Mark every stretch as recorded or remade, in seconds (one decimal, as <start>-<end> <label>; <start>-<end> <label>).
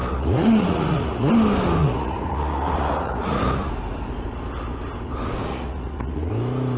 0.0-1.3 remade; 1.3-1.8 recorded; 1.8-3.7 remade; 3.7-5.5 recorded; 5.5-6.3 remade; 6.3-6.8 recorded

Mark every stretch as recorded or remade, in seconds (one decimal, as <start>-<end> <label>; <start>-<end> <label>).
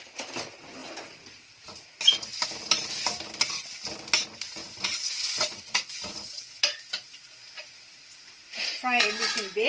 0.0-4.6 recorded; 4.6-9.2 remade; 9.2-9.7 recorded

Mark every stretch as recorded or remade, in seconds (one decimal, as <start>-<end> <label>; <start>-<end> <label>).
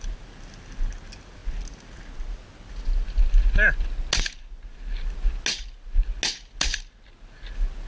0.0-7.9 recorded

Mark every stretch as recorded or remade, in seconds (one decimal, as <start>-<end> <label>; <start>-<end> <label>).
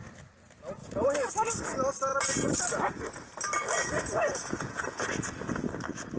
0.0-0.8 recorded; 0.8-1.3 remade; 1.3-3.8 recorded; 3.8-5.1 remade; 5.1-6.2 recorded